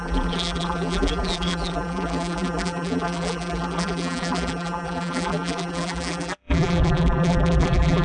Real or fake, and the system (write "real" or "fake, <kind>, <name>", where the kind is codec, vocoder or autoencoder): fake, vocoder, BigVGAN v2